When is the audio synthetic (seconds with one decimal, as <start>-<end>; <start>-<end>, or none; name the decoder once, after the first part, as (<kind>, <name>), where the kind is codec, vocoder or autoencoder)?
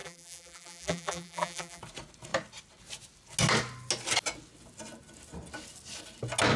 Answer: 0.0-1.8 (vocoder, BigVGAN v2)